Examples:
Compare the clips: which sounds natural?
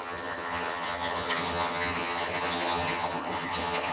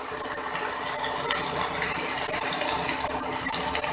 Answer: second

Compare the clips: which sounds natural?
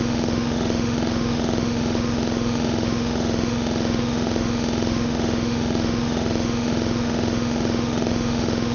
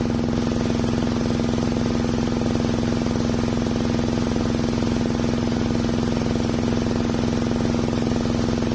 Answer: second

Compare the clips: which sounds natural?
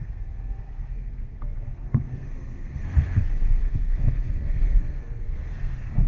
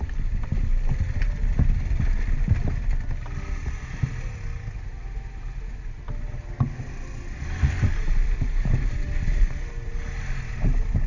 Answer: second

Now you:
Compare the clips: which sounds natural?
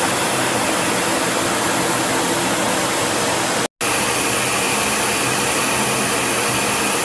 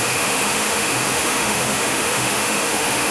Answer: first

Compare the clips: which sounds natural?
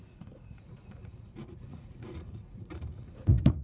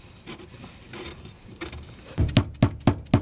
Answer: second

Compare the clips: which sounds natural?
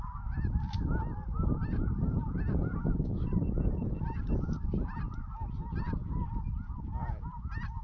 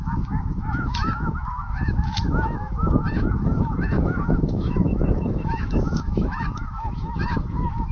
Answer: first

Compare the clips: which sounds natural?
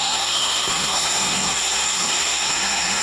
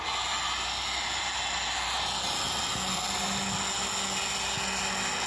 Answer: second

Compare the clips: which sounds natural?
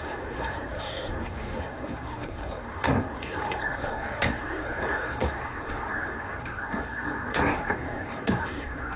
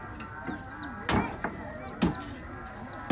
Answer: second